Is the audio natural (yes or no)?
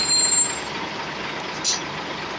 yes